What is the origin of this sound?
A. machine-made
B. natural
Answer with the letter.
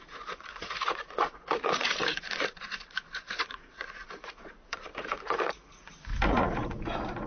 A